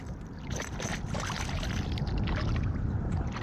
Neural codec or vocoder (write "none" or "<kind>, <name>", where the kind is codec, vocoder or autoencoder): none